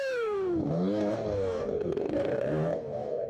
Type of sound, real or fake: fake